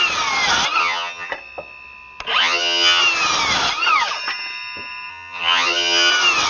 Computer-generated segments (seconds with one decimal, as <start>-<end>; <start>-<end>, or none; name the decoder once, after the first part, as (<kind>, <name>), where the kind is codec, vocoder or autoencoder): 0.8-1.3 (vocoder, HiFi-GAN); 2.4-3.0; 5.1-6.1